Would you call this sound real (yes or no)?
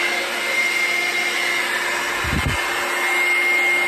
yes